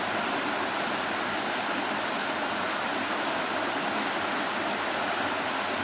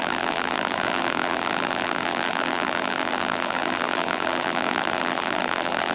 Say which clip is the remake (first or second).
second